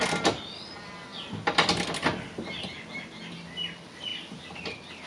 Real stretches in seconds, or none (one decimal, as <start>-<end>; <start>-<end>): 0.0-5.1